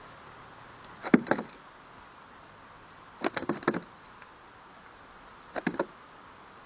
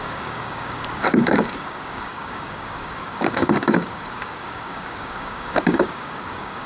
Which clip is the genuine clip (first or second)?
first